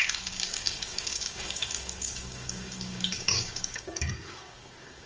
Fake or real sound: fake